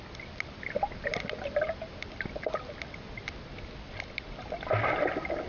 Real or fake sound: real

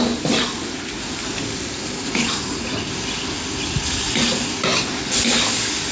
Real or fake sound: real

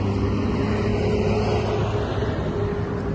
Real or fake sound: real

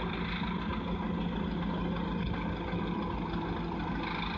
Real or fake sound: real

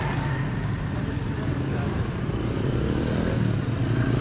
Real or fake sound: real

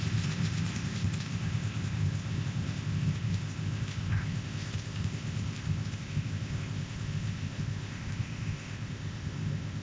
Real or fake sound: fake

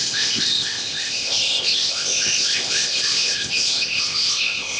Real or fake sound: fake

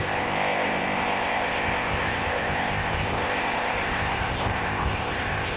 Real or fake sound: fake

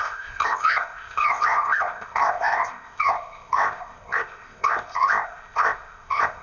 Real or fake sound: fake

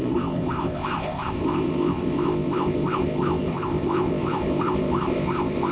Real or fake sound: fake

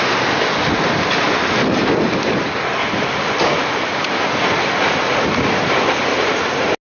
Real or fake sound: real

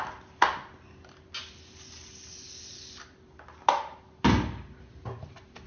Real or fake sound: real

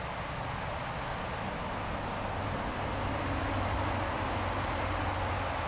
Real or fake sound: real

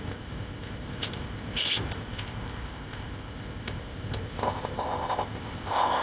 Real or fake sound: fake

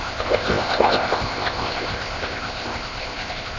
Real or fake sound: fake